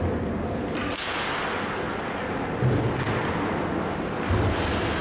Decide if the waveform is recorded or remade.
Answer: recorded